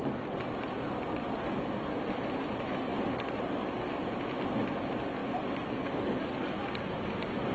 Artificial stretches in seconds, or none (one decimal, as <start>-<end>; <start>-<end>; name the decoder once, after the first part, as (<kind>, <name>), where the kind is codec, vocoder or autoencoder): none